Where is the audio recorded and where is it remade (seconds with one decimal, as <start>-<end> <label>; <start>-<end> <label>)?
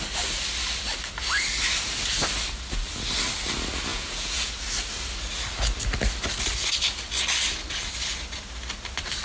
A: 0.0-3.9 recorded; 3.9-4.5 remade; 4.5-9.2 recorded